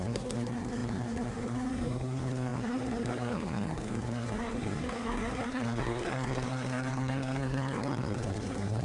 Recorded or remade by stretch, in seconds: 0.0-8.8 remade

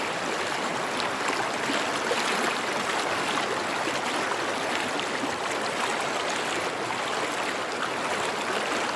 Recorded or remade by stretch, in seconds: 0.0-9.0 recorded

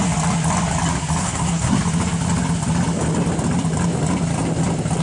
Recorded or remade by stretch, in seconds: 0.0-1.2 recorded; 1.2-1.8 remade; 1.8-5.0 recorded

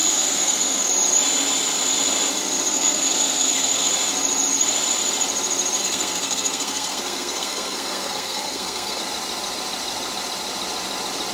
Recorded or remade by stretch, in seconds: 0.0-0.9 remade; 0.9-2.7 recorded; 2.7-3.9 remade; 3.9-5.8 recorded; 5.8-9.0 remade; 9.0-11.3 recorded